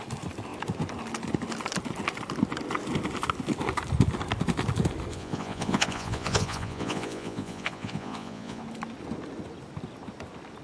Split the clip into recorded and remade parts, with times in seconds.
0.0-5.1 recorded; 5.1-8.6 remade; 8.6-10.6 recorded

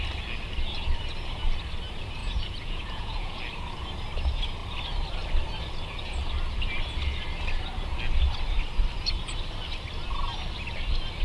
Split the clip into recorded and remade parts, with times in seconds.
0.0-2.2 recorded; 2.2-3.4 remade; 3.4-11.2 recorded

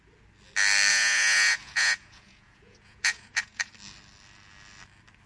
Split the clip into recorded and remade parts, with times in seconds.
0.0-0.9 recorded; 0.9-3.7 remade; 3.7-5.3 recorded

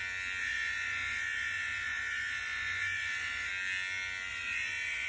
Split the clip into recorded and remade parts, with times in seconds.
0.0-0.4 recorded; 0.4-3.5 remade; 3.5-4.3 recorded; 4.3-5.1 remade